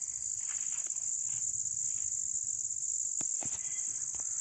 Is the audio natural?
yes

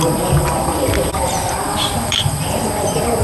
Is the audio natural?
no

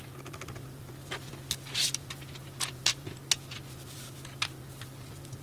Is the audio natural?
yes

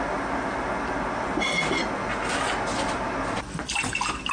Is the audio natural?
yes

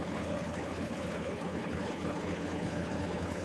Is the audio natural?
no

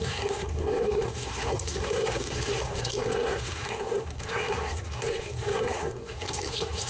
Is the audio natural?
no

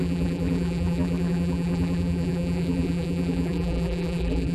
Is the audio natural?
no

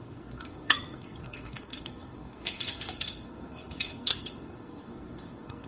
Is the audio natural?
no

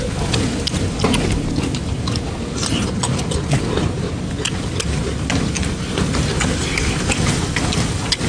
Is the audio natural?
yes